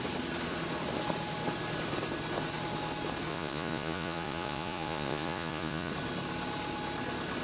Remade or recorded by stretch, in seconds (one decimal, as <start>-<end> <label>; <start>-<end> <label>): 0.0-3.3 recorded; 3.3-5.9 remade; 5.9-7.4 recorded